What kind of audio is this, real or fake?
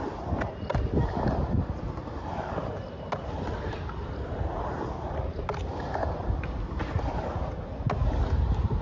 real